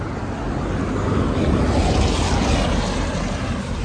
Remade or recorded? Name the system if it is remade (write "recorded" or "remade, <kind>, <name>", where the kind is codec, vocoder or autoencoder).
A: recorded